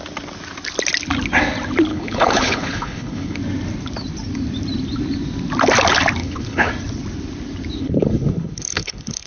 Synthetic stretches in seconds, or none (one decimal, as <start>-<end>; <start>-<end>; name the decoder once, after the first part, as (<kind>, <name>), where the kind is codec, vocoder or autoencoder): 1.9-3.4 (codec, HILCodec); 6.2-6.7; 7.8-9.3